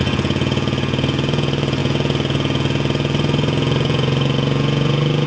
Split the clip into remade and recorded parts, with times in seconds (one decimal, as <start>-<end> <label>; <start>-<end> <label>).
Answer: 0.0-5.3 remade